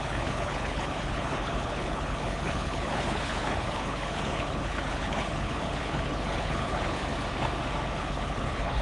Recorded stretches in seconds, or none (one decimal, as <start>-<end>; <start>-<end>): 7.1-8.0